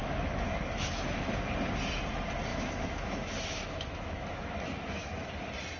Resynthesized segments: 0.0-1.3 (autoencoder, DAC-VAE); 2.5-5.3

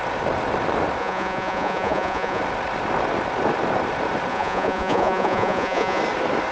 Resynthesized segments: 1.0-2.4 (vocoder, Vocos); 4.3-6.0

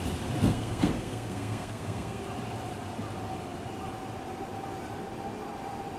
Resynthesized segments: 0.4-2.2 (codec, SNAC)

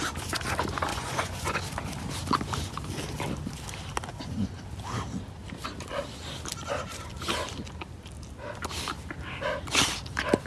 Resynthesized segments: 0.9-1.6 (vocoder, Vocos); 4.1-4.6

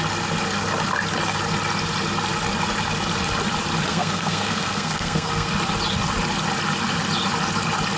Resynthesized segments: 3.9-5.5 (codec, SNAC)

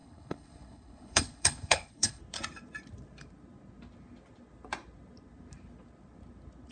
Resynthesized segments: 0.0-2.2 (codec, HILCodec)